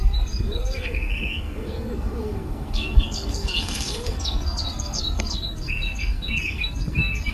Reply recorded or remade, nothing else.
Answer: remade